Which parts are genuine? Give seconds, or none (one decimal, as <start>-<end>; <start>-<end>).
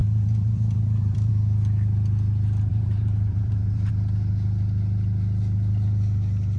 1.3-2.7; 3.9-6.6